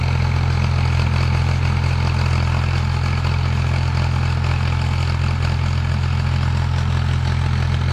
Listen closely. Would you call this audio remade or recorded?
recorded